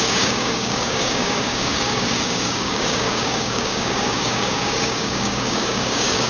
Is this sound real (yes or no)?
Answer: no